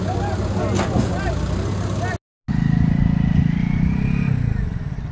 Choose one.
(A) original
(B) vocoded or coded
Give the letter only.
A